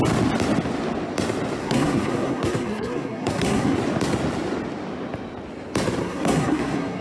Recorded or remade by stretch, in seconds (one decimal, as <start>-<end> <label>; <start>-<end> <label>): 0.0-1.6 recorded; 1.6-3.8 remade; 3.8-6.0 recorded; 6.0-7.0 remade